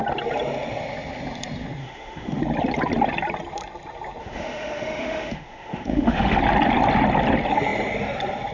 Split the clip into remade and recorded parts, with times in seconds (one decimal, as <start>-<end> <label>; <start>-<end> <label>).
0.0-1.8 recorded; 1.8-2.4 remade; 2.4-4.2 recorded; 4.2-6.4 remade; 6.4-8.5 recorded